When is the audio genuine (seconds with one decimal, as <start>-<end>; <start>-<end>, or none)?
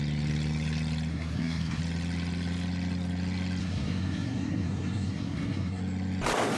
0.0-1.1; 1.8-3.6; 5.8-6.6